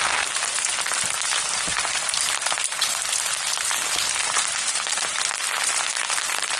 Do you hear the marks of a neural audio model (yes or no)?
yes